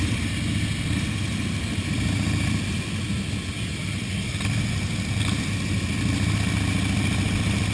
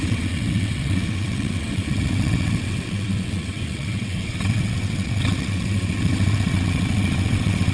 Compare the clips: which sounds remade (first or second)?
second